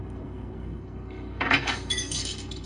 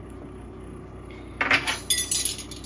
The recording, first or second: second